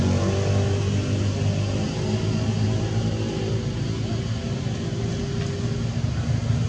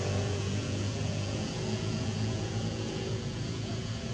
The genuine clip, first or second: first